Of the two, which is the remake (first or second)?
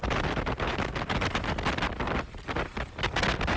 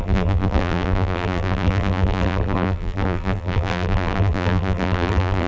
second